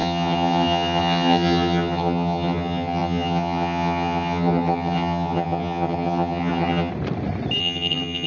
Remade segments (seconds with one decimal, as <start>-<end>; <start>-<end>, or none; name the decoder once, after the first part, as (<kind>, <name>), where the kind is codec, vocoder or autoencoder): 0.0-6.9 (vocoder, HiFi-GAN); 7.6-8.3